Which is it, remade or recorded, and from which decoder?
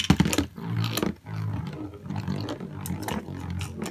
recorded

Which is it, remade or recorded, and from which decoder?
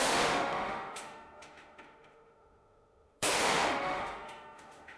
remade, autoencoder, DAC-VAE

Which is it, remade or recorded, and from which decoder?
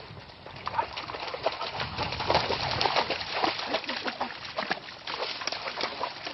recorded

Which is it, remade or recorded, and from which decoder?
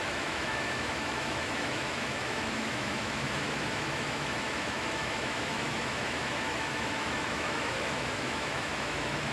remade, autoencoder, DAC-VAE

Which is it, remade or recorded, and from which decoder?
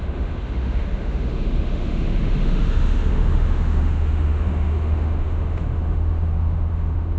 remade, autoencoder, DAC-VAE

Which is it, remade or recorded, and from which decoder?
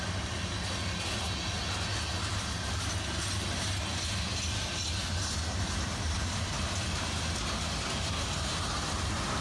recorded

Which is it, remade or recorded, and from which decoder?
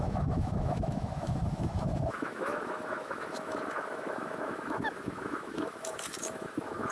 remade, autoencoder, DAC-VAE